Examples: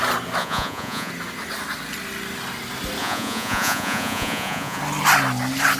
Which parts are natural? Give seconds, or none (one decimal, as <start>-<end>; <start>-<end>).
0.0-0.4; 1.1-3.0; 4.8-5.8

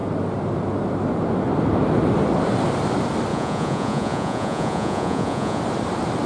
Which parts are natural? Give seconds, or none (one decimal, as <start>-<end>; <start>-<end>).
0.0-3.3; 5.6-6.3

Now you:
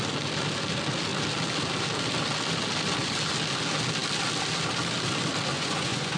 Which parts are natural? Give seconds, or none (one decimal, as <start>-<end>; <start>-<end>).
0.0-5.5

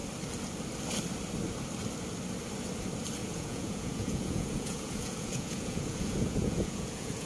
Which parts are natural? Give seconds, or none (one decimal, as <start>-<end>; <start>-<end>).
0.0-3.2